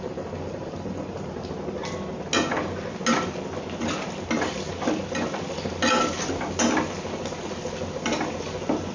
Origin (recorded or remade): recorded